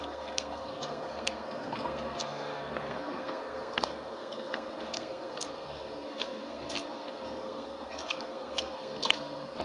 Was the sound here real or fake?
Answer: fake